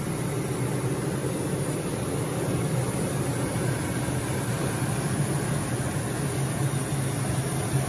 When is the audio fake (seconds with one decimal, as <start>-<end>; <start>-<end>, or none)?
1.2-5.9